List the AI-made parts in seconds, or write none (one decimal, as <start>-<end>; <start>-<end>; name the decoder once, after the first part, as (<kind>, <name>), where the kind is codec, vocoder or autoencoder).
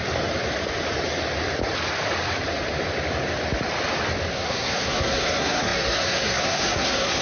4.3-7.2 (codec, SNAC)